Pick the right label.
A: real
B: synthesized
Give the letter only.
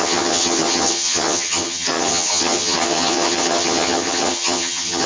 B